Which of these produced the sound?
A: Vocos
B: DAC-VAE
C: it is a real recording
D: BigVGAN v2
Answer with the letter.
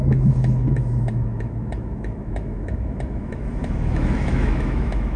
B